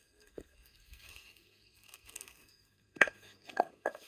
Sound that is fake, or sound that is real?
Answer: fake